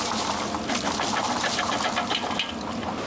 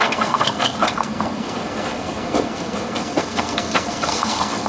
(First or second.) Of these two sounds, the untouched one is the first